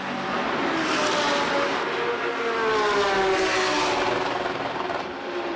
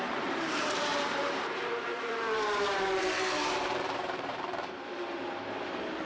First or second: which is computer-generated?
second